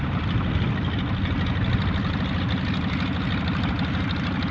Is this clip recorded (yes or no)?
yes